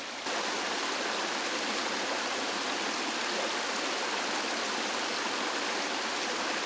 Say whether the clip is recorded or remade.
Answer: recorded